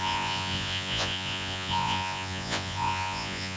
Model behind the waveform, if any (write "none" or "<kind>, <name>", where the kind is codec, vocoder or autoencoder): vocoder, Vocos